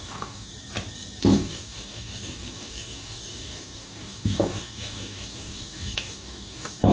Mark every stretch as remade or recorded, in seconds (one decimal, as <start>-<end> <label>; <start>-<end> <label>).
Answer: 0.0-0.5 remade; 0.5-1.2 recorded; 1.2-6.9 remade